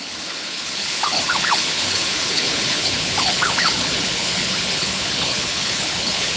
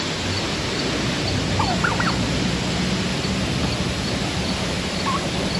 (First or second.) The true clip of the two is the second